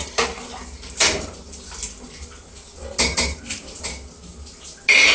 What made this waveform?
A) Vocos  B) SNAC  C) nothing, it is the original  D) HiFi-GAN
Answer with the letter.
C